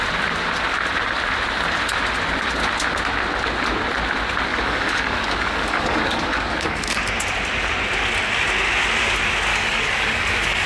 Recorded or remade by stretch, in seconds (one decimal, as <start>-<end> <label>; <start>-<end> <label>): 0.0-4.5 recorded; 4.5-7.0 remade; 7.0-9.5 recorded; 9.5-10.7 remade